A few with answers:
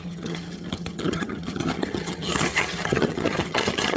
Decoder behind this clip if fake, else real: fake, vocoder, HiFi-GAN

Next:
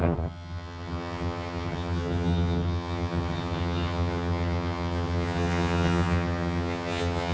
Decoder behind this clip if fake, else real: fake, vocoder, HiFi-GAN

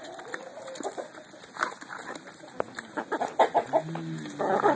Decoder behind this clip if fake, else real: real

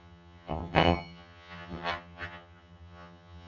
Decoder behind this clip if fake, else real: fake, vocoder, HiFi-GAN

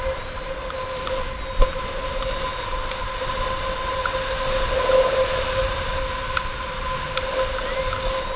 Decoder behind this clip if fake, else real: real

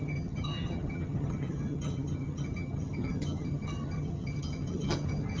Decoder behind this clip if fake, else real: fake, vocoder, HiFi-GAN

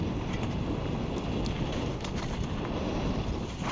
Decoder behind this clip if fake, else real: real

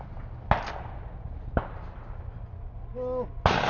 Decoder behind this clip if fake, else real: real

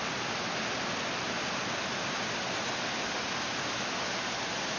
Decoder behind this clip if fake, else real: real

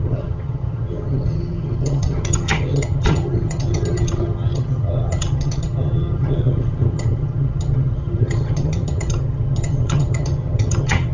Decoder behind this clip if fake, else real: fake, vocoder, HiFi-GAN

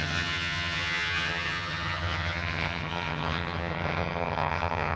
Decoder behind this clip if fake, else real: fake, vocoder, HiFi-GAN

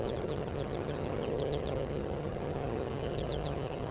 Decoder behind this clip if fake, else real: fake, vocoder, HiFi-GAN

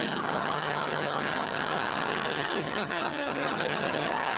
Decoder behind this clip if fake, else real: fake, vocoder, HiFi-GAN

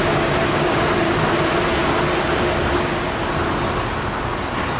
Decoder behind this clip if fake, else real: real